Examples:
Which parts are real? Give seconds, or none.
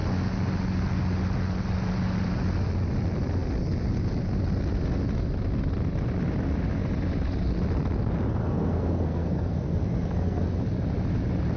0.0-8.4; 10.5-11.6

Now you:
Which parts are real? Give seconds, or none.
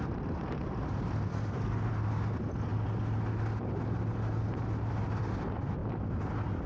0.0-1.3; 1.9-6.7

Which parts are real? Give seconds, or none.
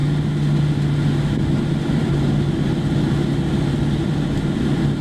0.0-5.0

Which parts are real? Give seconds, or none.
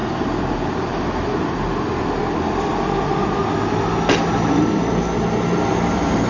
0.0-6.3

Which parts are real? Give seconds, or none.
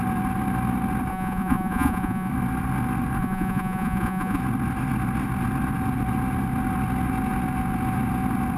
0.0-1.1; 2.3-3.2; 4.4-8.6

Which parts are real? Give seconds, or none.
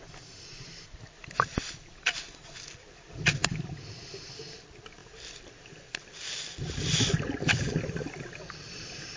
0.0-9.2